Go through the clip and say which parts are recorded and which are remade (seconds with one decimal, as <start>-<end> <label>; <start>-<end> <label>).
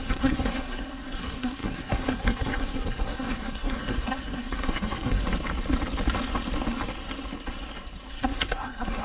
0.0-5.2 remade; 5.2-8.1 recorded; 8.1-9.0 remade